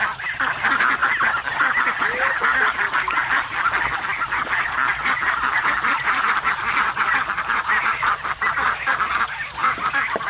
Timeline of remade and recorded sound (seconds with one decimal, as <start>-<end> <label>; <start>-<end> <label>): 0.0-10.3 recorded

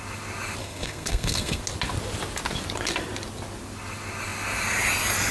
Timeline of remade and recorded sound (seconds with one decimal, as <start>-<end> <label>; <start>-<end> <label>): 0.0-0.6 recorded; 0.6-1.6 remade; 1.6-5.3 recorded

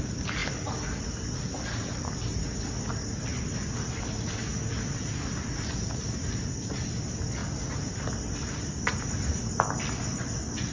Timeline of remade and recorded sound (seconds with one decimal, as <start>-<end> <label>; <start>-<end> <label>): 0.0-10.7 recorded

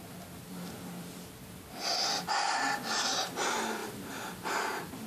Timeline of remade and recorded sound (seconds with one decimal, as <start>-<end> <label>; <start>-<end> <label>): 0.0-5.1 recorded

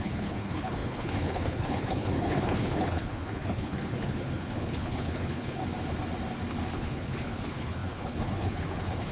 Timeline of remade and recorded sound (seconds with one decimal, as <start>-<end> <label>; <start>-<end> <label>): 0.0-5.6 remade; 5.6-6.7 recorded; 6.7-9.1 remade

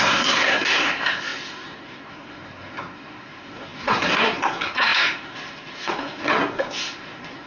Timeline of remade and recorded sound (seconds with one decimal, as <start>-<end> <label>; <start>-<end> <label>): 0.0-7.5 remade

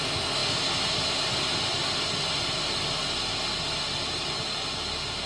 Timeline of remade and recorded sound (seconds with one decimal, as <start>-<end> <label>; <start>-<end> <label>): 0.0-5.3 recorded

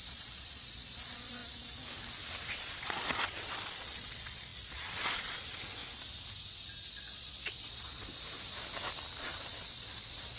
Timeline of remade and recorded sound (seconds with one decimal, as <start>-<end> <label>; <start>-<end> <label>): 0.0-1.4 remade; 1.4-2.5 recorded; 2.5-5.8 remade; 5.8-6.9 recorded; 6.9-8.1 remade; 8.1-9.2 recorded; 9.2-10.4 remade